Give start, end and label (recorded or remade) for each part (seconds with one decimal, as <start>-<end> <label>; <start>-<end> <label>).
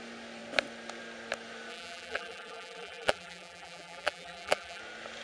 0.0-1.7 recorded; 1.7-4.8 remade; 4.8-5.2 recorded